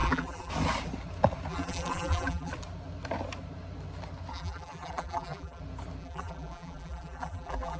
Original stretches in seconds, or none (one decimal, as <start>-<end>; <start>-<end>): 0.5-1.5; 2.5-4.3; 5.6-6.0